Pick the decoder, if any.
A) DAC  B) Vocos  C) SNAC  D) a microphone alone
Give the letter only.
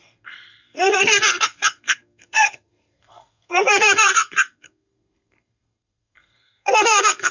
C